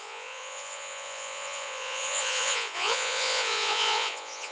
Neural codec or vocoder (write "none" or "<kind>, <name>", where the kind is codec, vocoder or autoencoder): vocoder, Vocos